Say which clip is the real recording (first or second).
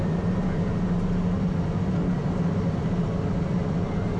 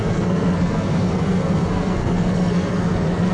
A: first